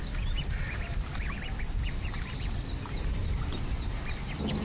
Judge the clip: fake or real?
real